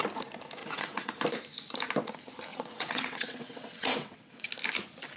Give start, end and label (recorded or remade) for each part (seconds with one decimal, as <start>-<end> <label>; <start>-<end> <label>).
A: 0.0-0.6 recorded; 0.6-1.1 remade; 1.1-2.5 recorded; 2.5-4.5 remade; 4.5-5.2 recorded